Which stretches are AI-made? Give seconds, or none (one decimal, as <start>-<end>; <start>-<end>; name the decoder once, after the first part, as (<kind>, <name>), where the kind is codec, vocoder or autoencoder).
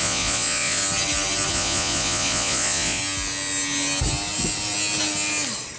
0.0-0.8 (vocoder, Vocos); 1.5-3.0